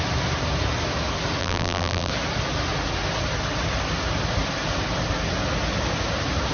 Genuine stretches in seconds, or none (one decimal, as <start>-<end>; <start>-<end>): 0.0-1.4; 2.1-6.5